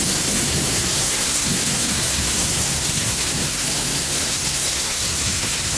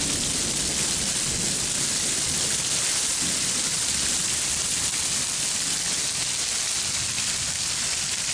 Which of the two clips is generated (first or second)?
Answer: first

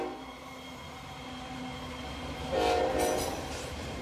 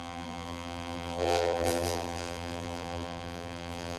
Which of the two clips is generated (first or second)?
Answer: second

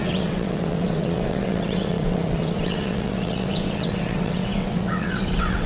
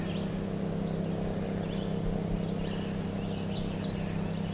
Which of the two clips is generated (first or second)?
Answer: first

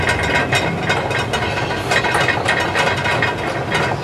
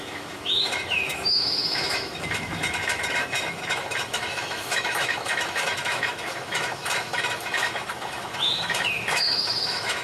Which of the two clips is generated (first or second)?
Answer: second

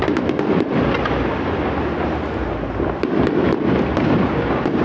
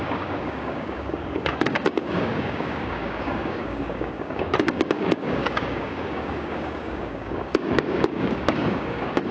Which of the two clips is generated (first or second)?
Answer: second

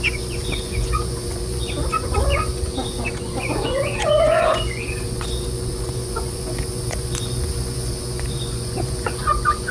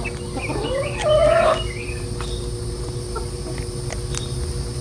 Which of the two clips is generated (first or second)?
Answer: first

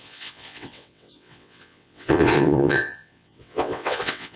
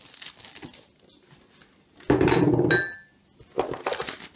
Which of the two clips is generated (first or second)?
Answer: first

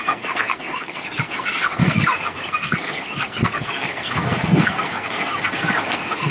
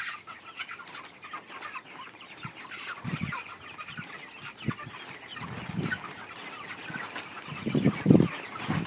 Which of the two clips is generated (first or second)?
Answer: first